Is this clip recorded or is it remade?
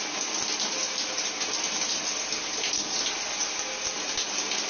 recorded